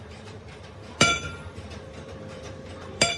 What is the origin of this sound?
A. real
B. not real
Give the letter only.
B